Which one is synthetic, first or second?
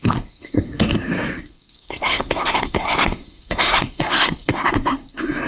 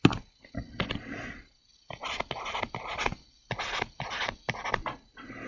first